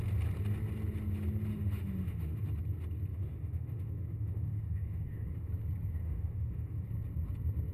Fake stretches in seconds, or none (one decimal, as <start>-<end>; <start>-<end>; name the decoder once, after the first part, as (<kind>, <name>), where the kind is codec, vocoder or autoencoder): 1.5-2.4 (autoencoder, DAC-VAE); 3.1-5.5; 6.0-6.9